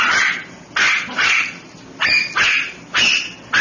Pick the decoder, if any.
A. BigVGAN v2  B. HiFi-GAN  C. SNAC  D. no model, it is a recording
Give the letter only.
D